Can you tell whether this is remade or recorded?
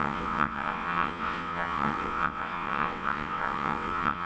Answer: remade